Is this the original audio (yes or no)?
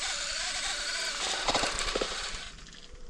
yes